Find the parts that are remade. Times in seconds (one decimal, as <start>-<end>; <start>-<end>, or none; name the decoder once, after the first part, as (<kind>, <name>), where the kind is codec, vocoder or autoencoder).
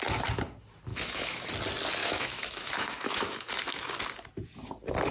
0.9-1.5 (autoencoder, DAC-VAE); 2.0-4.0